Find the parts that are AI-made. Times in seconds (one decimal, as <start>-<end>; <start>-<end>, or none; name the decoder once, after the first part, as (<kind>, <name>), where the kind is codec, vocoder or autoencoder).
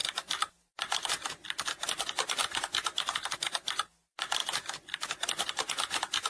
0.0-0.7 (vocoder, BigVGAN v2)